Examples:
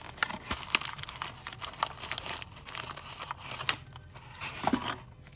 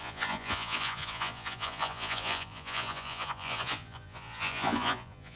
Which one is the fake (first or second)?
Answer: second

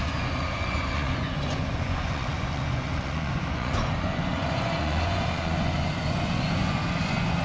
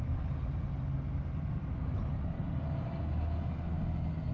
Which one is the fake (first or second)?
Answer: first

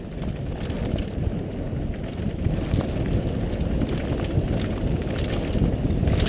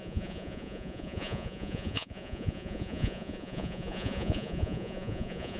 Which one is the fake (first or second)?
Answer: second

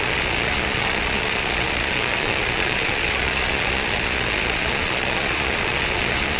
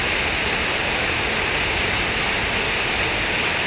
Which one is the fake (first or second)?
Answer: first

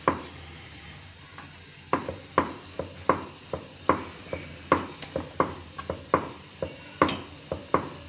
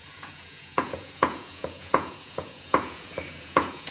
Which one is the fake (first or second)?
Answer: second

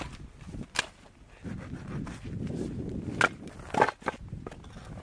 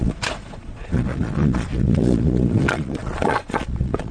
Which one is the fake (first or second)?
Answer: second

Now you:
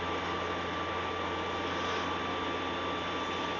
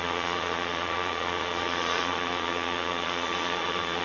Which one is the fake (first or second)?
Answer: second